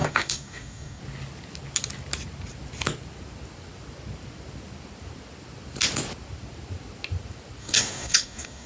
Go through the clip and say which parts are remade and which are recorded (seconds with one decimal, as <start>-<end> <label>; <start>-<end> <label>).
0.0-1.0 remade; 1.0-7.6 recorded; 7.6-8.7 remade